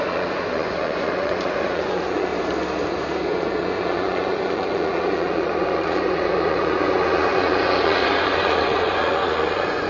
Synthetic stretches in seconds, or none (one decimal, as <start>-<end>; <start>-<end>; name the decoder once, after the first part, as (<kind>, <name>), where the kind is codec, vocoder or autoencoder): 0.0-2.3 (vocoder, Vocos); 3.3-9.9